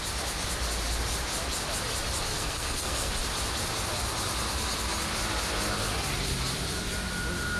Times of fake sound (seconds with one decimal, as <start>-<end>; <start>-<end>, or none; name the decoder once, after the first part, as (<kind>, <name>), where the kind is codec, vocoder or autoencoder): 2.3-3.1 (codec, SNAC)

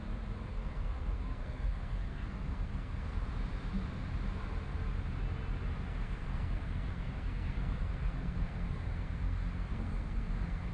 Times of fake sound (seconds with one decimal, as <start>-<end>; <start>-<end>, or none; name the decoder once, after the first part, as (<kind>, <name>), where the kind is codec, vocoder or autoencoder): 0.5-3.3 (codec, SNAC); 5.9-10.7

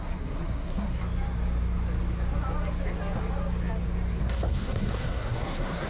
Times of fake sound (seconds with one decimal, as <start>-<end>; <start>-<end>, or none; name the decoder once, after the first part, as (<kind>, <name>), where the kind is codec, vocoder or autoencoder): 0.0-1.0 (codec, SNAC); 4.2-5.9

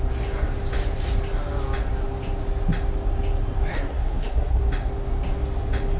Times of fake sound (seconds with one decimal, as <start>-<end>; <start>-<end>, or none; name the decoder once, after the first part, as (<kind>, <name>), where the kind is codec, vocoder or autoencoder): 3.7-4.6 (codec, SNAC)

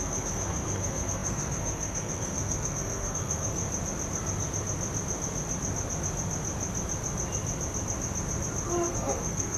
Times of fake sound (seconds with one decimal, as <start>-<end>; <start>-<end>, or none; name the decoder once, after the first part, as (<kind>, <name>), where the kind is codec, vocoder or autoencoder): 0.0-3.6 (codec, SNAC); 8.9-9.6

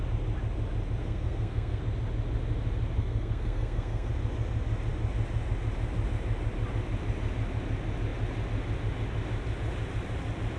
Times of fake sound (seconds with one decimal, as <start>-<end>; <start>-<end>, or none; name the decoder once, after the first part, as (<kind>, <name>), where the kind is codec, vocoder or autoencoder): 1.0-1.8 (codec, SNAC); 3.0-4.1